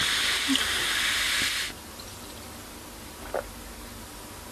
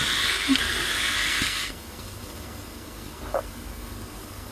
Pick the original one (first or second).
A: first